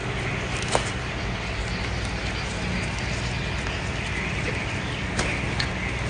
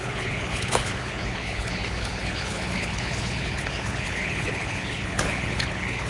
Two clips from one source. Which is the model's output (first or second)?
second